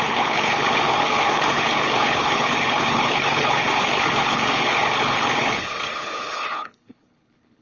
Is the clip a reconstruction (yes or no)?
yes